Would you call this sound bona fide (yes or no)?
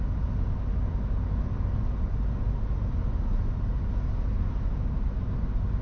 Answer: yes